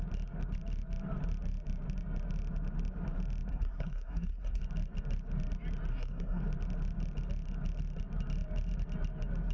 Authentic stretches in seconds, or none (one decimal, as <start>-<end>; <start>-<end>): 0.0-3.5; 4.6-5.9; 6.4-9.5